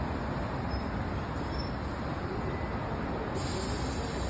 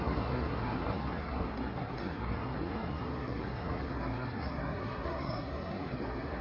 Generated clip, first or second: second